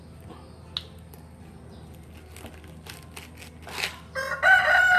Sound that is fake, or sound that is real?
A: real